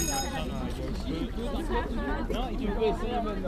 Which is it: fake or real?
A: real